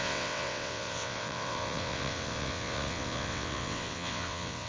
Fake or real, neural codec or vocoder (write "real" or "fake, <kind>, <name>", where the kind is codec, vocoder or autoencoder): fake, vocoder, WaveNeXt